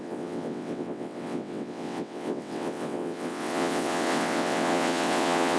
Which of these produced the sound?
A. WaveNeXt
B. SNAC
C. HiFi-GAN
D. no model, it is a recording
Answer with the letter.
A